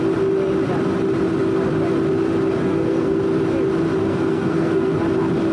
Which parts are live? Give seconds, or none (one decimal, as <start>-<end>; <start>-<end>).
0.0-2.7; 3.2-4.0; 5.0-5.5